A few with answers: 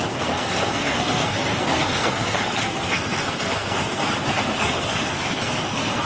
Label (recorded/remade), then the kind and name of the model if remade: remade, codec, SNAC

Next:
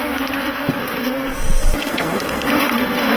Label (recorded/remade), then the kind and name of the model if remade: remade, codec, SNAC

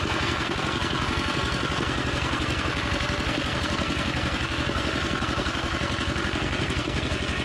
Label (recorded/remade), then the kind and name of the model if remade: remade, codec, SNAC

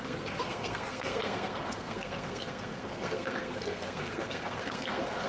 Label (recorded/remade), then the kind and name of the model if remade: remade, codec, SNAC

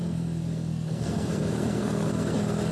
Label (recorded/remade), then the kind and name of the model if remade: remade, codec, SNAC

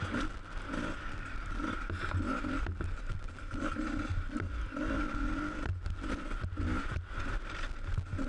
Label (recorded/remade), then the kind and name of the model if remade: recorded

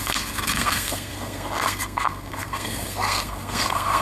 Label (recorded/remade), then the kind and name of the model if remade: remade, codec, SNAC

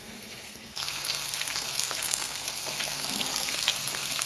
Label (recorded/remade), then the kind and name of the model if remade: remade, codec, SNAC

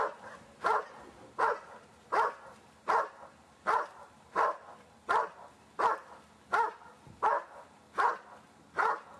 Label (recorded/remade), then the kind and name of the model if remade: recorded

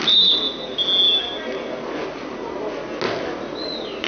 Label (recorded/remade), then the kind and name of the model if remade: recorded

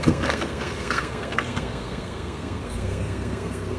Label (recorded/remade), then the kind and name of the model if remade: remade, codec, SNAC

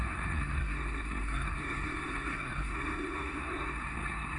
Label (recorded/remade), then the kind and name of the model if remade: remade, codec, SNAC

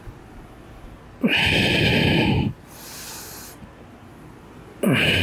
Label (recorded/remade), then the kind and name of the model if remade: recorded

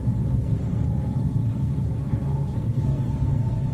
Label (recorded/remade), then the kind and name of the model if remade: remade, codec, SNAC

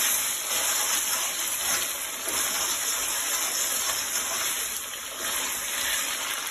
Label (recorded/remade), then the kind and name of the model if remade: recorded